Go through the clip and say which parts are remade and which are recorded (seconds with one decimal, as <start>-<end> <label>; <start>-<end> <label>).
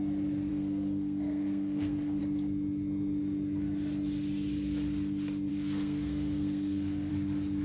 0.0-0.5 recorded; 0.5-2.2 remade; 2.2-5.5 recorded; 5.5-7.1 remade; 7.1-7.6 recorded